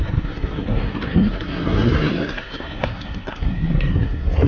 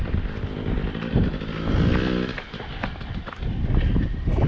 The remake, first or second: first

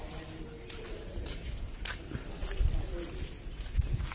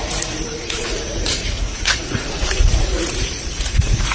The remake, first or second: second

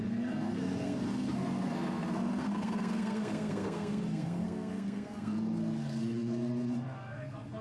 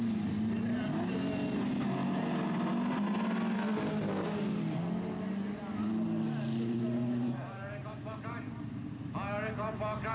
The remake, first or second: first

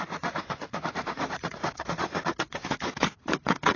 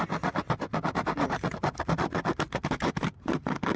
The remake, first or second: first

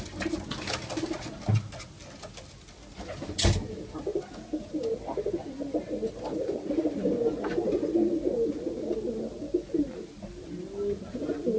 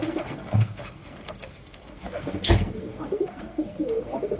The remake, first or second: second